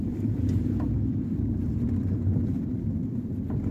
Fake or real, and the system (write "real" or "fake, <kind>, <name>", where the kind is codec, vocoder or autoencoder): fake, vocoder, BigVGAN v2